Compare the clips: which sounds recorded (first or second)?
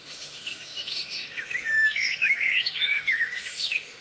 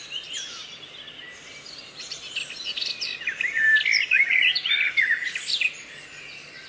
second